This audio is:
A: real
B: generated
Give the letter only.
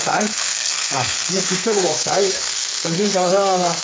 B